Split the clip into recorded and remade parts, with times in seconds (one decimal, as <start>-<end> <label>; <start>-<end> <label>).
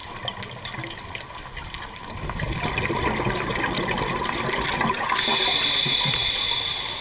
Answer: 0.0-7.0 recorded